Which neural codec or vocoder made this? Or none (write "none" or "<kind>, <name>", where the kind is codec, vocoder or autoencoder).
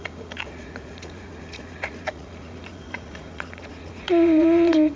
vocoder, Vocos